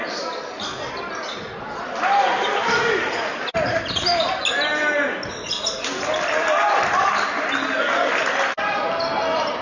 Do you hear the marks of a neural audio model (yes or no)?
no